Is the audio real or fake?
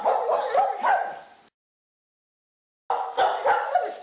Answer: real